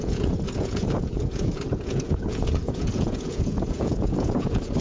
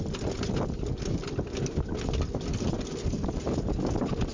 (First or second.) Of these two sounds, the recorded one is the second